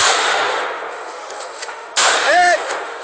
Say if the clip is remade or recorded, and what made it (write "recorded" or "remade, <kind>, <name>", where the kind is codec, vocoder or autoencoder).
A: remade, autoencoder, DAC-VAE